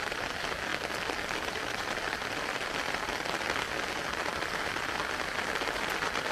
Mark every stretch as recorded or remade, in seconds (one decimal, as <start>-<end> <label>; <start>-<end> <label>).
0.0-6.3 recorded